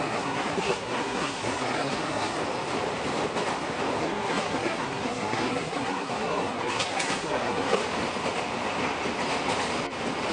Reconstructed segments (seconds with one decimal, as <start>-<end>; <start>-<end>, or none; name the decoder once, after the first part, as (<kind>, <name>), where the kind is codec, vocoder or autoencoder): 0.0-2.4 (codec, SNAC); 4.0-7.8